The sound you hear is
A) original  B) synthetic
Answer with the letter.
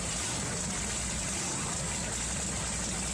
A